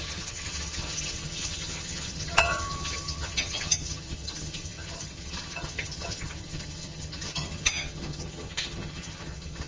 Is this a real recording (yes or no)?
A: no